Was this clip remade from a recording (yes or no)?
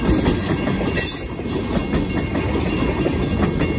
no